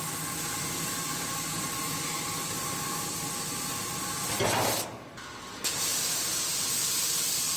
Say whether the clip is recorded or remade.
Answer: recorded